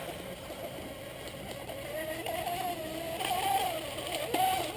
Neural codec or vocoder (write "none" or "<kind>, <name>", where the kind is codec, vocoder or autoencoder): none